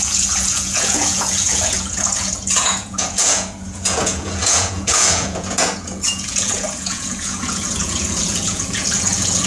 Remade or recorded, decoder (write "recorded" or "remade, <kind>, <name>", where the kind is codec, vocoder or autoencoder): remade, vocoder, Vocos